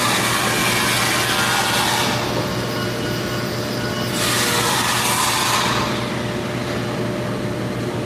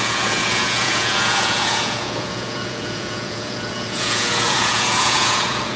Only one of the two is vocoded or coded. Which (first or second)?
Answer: second